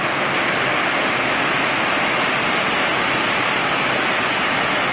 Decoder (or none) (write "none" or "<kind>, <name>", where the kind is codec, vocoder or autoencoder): none